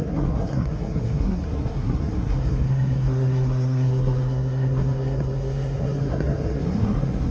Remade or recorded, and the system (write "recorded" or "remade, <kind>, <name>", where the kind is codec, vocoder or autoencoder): remade, codec, SNAC